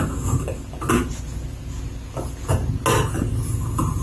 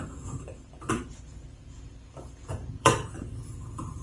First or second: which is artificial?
second